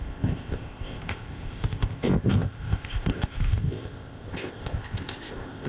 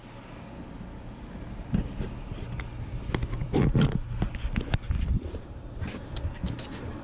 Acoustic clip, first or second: second